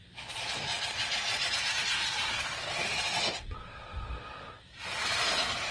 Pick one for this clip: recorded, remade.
recorded